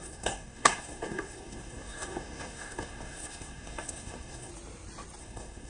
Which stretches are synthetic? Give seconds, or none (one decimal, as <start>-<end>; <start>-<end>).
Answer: 0.0-4.5; 5.2-5.7